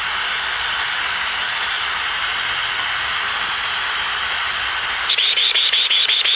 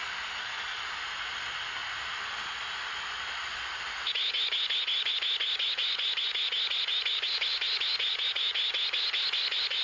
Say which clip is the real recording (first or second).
second